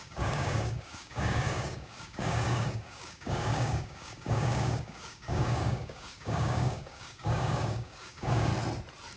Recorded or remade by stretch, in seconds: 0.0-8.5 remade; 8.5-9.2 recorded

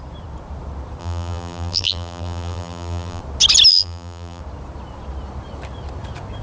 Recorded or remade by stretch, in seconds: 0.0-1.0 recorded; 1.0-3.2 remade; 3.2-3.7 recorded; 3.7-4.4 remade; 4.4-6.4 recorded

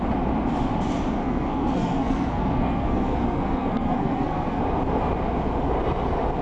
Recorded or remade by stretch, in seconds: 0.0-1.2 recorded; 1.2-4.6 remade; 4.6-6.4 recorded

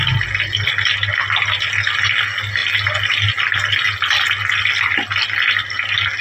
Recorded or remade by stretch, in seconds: 0.0-6.2 recorded